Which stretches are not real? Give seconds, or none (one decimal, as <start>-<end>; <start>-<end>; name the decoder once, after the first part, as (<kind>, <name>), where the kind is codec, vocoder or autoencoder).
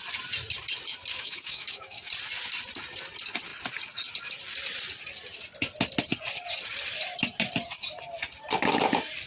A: 1.1-2.1 (autoencoder, DAC-VAE)